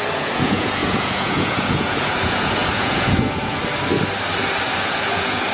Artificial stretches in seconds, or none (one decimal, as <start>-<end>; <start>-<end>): 0.0-3.6; 4.8-5.5